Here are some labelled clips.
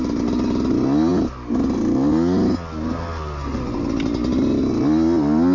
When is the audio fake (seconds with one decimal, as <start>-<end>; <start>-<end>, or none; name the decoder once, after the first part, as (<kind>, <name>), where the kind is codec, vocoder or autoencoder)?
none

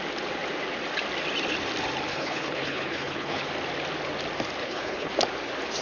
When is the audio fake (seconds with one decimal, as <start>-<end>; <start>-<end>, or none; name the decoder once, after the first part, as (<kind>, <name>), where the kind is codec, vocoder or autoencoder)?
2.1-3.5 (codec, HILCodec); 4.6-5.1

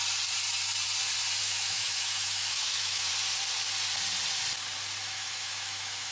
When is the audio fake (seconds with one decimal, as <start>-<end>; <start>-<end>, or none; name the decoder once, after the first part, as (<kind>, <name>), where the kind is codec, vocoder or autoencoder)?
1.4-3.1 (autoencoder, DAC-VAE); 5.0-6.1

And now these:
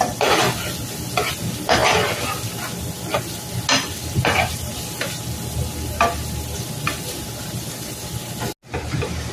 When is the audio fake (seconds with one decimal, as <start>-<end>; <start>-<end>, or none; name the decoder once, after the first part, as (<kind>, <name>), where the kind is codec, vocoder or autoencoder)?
none

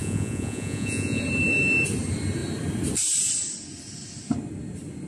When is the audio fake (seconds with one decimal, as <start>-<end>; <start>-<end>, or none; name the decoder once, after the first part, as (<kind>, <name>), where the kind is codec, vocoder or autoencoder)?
0.0-1.2 (vocoder, Vocos)

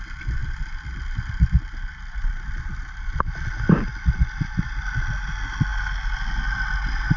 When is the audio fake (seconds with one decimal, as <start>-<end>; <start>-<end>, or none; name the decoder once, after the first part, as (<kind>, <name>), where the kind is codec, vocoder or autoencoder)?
none

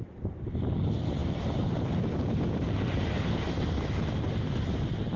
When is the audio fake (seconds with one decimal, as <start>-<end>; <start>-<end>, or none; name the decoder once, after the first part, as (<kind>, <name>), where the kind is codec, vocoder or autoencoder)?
none